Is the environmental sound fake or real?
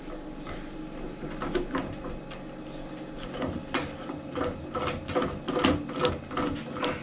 real